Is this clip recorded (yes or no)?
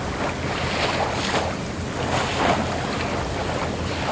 yes